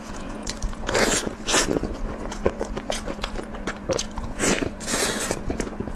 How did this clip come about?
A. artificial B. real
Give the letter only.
A